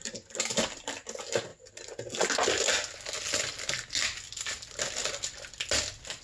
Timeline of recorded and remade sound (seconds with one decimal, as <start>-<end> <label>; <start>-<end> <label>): 0.0-6.2 recorded